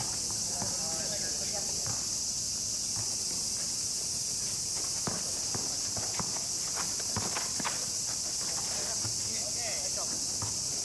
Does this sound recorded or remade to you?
recorded